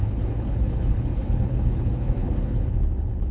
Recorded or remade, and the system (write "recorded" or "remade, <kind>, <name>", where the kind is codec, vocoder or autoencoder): remade, codec, HILCodec